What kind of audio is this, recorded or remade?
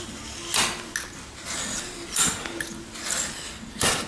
recorded